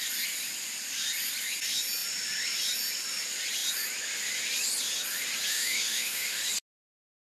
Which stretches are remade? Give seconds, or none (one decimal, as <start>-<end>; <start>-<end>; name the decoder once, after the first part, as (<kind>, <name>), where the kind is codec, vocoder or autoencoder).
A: 5.5-6.4 (autoencoder, DAC-VAE)